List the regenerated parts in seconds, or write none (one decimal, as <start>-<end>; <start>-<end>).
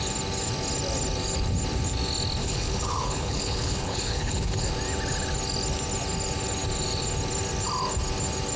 2.4-4.7